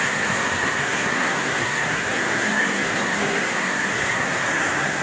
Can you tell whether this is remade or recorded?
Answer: remade